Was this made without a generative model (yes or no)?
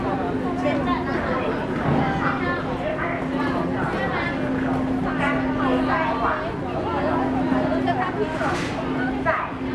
yes